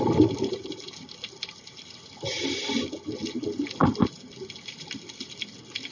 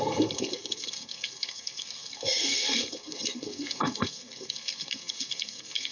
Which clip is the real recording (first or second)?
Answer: first